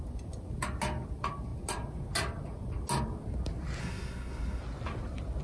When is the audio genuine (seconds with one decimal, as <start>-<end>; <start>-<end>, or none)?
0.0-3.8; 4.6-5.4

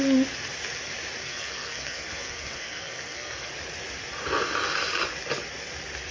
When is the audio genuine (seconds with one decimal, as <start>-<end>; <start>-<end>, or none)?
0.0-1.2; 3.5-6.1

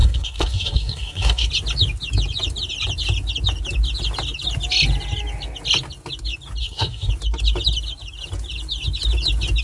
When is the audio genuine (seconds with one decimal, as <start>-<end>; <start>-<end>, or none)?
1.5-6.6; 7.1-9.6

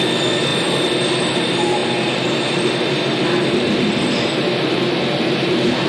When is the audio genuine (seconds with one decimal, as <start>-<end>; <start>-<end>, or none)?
0.0-5.9